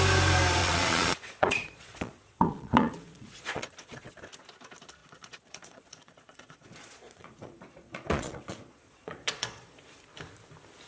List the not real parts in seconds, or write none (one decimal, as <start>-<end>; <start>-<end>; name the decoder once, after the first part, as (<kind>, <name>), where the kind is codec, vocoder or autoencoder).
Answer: 0.6-4.2 (vocoder, Vocos); 5.0-10.0